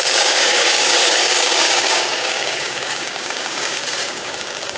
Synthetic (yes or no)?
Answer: yes